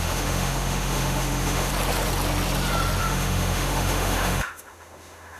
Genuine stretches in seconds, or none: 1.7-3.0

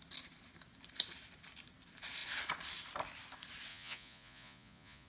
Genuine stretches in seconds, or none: 0.0-3.7

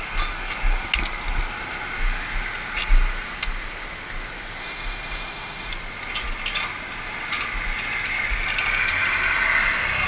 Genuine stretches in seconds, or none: 0.0-4.6; 5.7-10.1

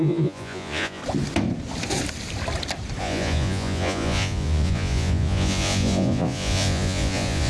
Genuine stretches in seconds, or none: 1.0-3.0

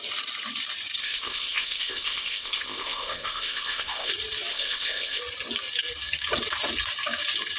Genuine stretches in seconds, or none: 0.0-1.0; 4.1-4.5; 5.2-7.6

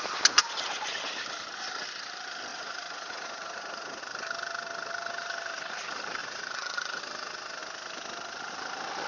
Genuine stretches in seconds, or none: 0.0-2.5; 4.0-6.2; 7.0-9.1

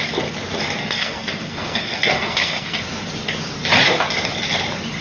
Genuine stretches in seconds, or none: 0.0-0.8; 2.8-5.0